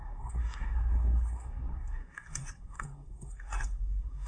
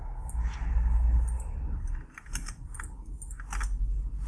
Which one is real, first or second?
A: second